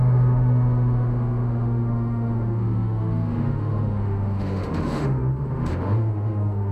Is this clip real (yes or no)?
no